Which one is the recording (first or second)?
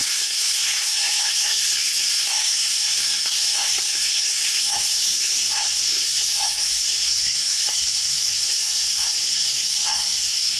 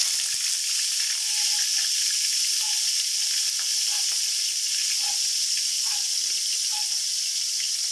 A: second